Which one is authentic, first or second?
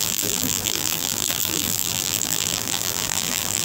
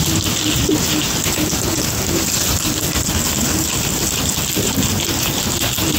second